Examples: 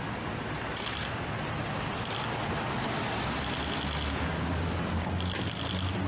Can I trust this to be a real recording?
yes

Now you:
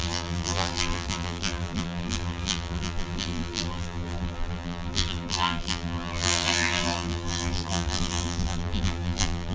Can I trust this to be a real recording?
no